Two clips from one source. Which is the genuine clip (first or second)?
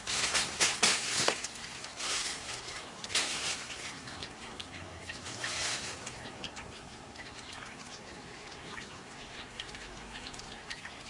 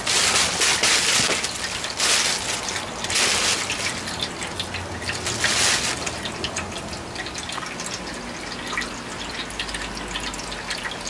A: second